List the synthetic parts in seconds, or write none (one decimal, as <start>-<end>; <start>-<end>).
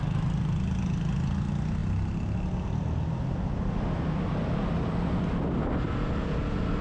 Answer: none